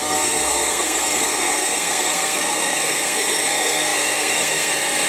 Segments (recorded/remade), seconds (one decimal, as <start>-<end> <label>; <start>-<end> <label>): 0.0-5.1 remade